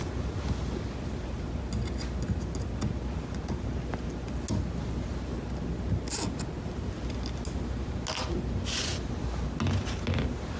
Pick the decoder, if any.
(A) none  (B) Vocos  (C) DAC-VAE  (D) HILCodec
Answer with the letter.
A